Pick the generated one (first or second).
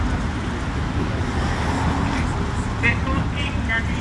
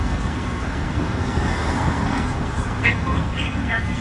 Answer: second